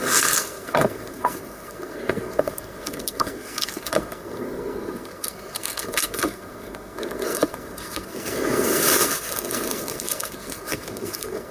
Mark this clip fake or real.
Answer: fake